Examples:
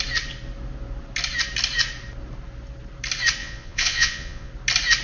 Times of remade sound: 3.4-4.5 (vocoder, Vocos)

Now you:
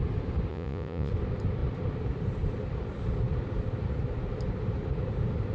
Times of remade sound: 0.5-1.1 (vocoder, Vocos)